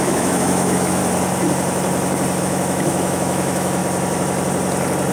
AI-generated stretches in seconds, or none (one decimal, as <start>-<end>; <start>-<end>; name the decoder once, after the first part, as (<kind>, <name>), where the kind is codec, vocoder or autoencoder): 0.0-1.0 (autoencoder, DAC-VAE); 2.4-3.8